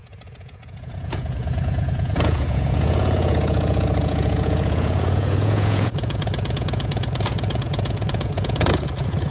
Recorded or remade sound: remade